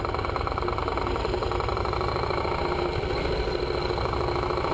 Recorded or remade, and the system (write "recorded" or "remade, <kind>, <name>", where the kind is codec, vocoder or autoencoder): recorded